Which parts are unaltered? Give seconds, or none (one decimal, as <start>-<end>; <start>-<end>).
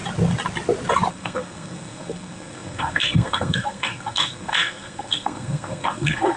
0.0-1.1